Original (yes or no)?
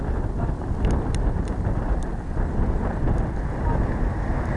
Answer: yes